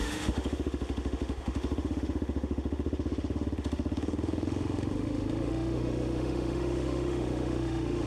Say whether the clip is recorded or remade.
remade